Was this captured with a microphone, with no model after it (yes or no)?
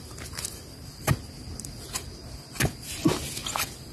yes